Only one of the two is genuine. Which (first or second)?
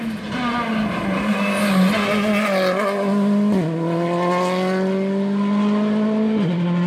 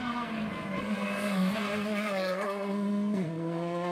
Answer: first